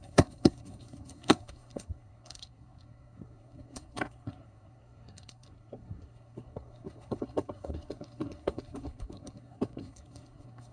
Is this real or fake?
fake